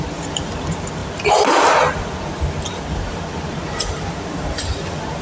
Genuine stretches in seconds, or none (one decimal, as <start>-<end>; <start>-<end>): 0.0-5.2